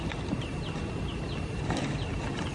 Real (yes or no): yes